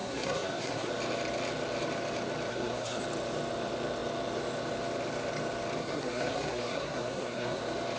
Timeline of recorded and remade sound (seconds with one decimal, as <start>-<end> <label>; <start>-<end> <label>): 0.0-0.9 remade; 0.9-2.5 recorded; 2.5-3.0 remade; 3.0-5.8 recorded; 5.8-7.6 remade; 7.6-8.0 recorded